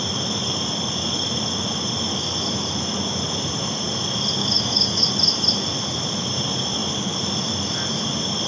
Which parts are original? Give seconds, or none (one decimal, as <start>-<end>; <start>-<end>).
0.0-4.4; 5.0-8.5